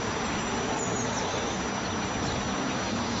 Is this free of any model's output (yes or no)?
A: yes